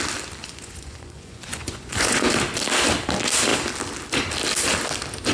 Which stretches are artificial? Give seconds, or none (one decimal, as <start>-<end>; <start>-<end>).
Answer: 0.4-2.3